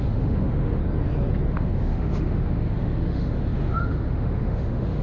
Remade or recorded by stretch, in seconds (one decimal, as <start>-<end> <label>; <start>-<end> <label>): 0.0-0.8 remade; 0.8-1.5 recorded; 1.5-5.0 remade